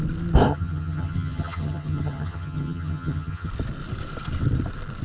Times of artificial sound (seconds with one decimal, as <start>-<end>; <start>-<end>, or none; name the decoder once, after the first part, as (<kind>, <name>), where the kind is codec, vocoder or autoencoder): 0.5-3.5 (vocoder, HiFi-GAN)